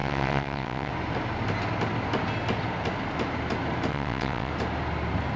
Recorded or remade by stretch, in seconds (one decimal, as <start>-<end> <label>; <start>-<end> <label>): 0.0-0.9 remade; 0.9-3.9 recorded; 3.9-4.5 remade; 4.5-5.4 recorded